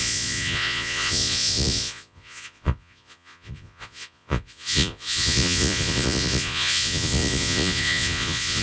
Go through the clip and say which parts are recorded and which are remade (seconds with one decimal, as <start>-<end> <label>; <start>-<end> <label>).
0.0-8.6 remade